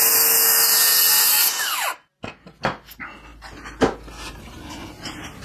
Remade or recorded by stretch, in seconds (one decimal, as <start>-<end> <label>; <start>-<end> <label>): 0.0-1.4 recorded; 1.4-2.1 remade; 2.1-5.4 recorded